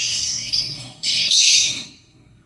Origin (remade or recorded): remade